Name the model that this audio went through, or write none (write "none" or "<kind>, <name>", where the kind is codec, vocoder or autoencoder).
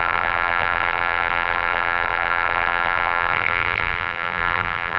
vocoder, BigVGAN v2